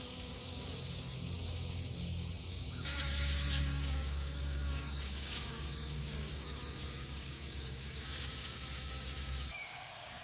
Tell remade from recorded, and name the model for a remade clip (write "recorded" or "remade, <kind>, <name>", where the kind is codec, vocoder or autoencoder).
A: remade, codec, DAC